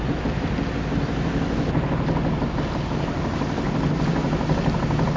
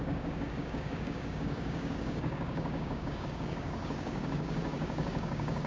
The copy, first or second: second